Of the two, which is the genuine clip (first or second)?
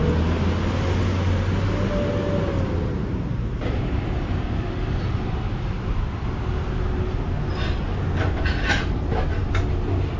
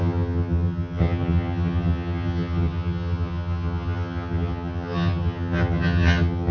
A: first